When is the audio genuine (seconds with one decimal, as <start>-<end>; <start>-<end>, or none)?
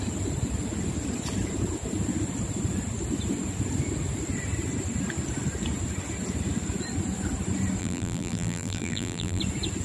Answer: 0.0-7.8; 9.4-9.8